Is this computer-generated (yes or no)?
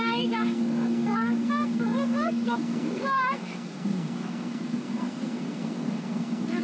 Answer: yes